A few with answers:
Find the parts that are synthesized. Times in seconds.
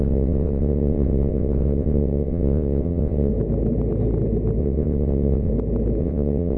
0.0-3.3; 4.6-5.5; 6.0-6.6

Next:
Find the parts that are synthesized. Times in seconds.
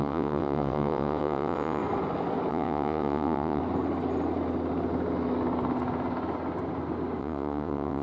0.0-1.8; 2.5-3.6; 7.2-8.0